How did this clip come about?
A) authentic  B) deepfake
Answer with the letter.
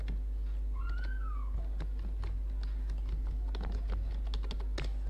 A